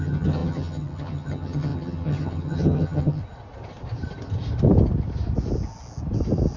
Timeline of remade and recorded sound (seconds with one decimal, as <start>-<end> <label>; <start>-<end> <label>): 0.0-3.2 remade; 3.2-6.6 recorded